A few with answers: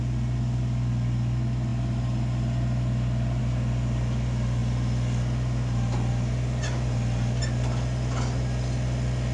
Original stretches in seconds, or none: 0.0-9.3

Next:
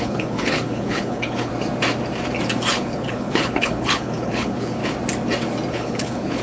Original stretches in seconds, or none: 1.5-2.7; 4.8-5.7

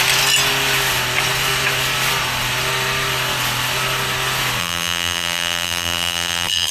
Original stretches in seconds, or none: 0.0-4.6

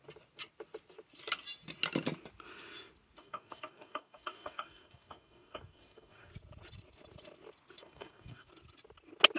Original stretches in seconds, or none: 0.0-3.2; 6.3-7.8; 8.5-9.4